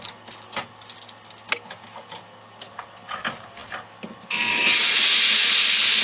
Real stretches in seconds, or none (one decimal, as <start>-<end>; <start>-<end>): 0.0-6.0